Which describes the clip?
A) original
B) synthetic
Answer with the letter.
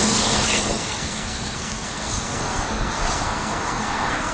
B